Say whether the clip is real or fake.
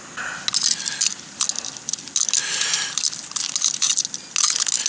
real